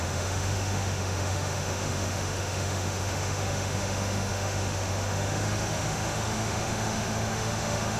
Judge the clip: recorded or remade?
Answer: remade